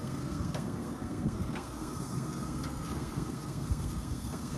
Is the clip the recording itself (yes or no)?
no